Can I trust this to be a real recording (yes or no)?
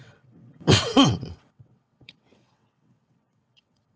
no